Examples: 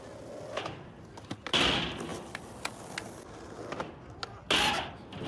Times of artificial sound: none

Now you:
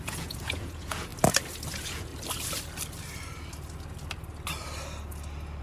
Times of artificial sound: 0.0-1.1 (vocoder, Vocos); 1.7-2.1

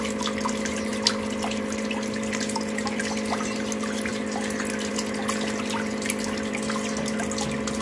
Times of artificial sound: none

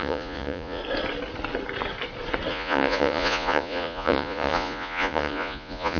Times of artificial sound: 0.0-0.8 (vocoder, Vocos); 2.5-6.0

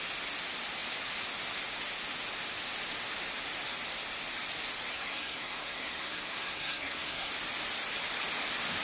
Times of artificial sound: 4.9-7.3 (codec, SNAC)